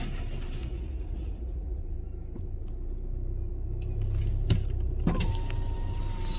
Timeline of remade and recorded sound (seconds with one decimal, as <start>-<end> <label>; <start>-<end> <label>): 0.0-0.6 recorded; 0.6-1.8 remade; 1.8-6.4 recorded

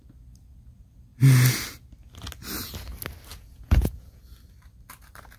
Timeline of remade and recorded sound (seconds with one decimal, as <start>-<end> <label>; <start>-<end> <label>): 0.0-3.3 recorded; 3.3-4.2 remade; 4.2-5.4 recorded

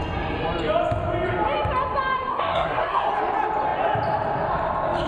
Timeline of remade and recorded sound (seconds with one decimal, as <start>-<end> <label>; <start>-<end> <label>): 0.0-2.3 recorded; 2.3-3.1 remade; 3.1-5.1 recorded